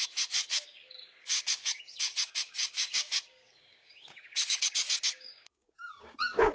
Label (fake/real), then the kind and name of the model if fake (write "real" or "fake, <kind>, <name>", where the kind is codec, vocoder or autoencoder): fake, codec, DAC